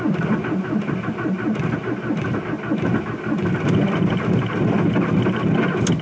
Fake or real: real